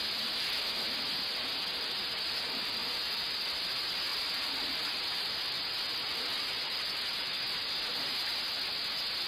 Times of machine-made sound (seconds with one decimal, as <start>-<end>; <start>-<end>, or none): none